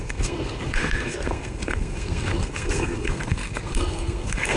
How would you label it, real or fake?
fake